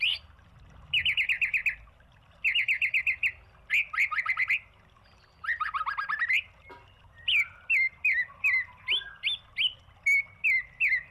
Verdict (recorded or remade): recorded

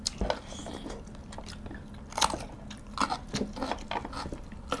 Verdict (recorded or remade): recorded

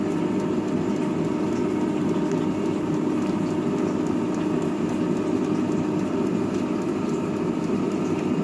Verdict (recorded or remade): recorded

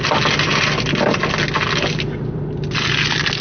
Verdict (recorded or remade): recorded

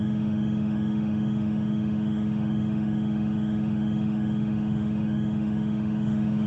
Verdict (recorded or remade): remade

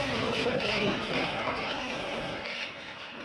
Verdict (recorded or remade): remade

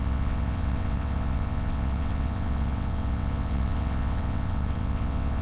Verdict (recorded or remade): remade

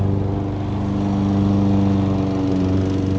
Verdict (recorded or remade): recorded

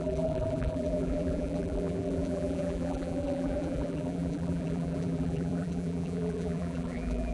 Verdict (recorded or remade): remade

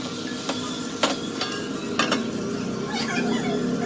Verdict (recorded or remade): recorded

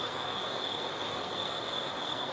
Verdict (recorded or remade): remade